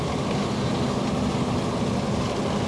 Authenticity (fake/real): real